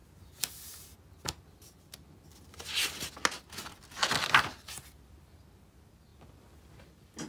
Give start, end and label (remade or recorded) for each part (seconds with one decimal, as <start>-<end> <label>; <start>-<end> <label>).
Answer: 0.0-7.3 recorded